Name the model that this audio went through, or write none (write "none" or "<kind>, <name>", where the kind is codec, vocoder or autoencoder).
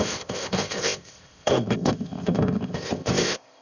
codec, ZipCodec